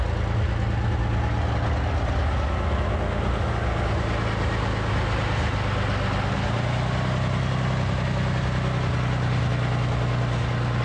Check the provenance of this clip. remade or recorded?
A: recorded